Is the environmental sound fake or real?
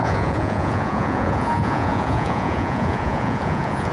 fake